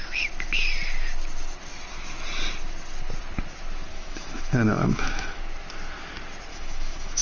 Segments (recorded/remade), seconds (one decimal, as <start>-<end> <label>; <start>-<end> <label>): 0.0-3.9 recorded; 3.9-5.4 remade; 5.4-6.5 recorded; 6.5-7.2 remade